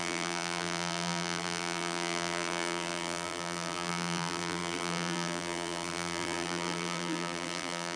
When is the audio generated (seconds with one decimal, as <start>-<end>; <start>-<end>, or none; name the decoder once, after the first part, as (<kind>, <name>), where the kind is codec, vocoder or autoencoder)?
0.0-8.0 (vocoder, BigVGAN v2)